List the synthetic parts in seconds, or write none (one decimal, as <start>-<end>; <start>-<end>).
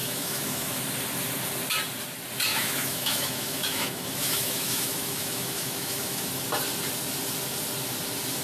0.0-0.8; 2.5-6.3